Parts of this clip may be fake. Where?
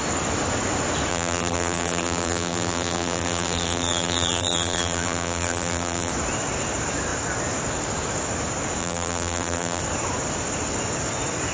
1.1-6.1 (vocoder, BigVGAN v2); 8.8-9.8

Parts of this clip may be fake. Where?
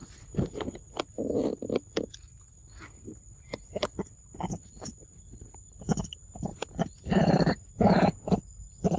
0.0-0.7 (vocoder, BigVGAN v2); 6.5-7.7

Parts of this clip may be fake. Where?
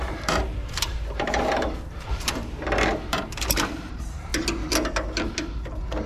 0.0-4.3 (vocoder, BigVGAN v2)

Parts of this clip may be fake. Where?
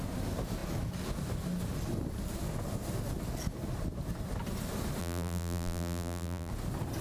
5.0-6.5 (vocoder, BigVGAN v2)